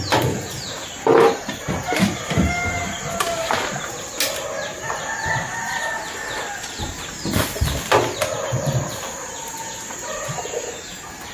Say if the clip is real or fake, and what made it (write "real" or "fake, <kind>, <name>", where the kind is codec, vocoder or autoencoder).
real